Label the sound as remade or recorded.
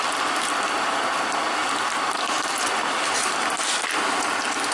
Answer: recorded